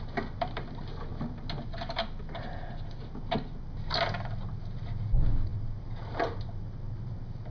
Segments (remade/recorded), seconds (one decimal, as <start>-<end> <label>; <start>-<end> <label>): 0.0-7.5 recorded